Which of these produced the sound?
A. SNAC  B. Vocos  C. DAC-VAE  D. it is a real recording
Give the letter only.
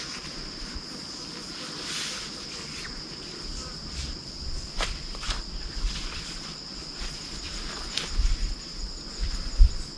D